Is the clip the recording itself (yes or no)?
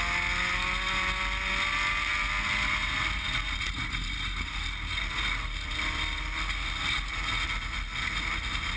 yes